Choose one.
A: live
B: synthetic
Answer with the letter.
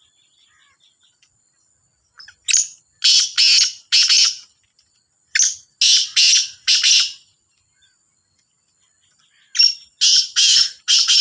A